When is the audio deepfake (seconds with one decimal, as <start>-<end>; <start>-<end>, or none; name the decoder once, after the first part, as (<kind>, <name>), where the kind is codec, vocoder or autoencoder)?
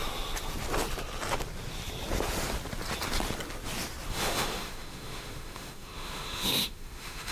4.1-7.3 (autoencoder, DAC-VAE)